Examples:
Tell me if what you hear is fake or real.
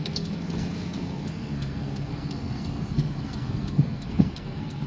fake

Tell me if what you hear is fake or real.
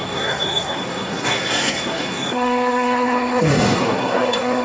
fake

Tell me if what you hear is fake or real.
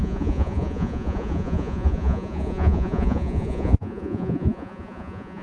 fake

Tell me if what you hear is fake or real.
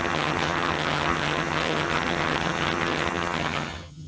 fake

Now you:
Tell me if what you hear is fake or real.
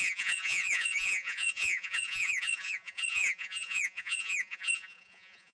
fake